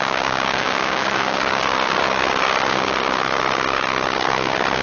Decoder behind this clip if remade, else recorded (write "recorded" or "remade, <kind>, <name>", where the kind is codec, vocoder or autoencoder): remade, codec, DAC